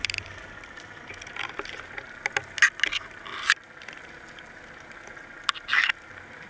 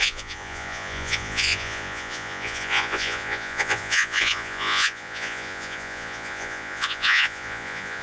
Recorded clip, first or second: first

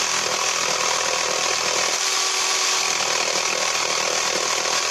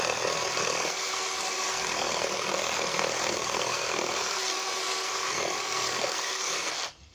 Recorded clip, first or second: first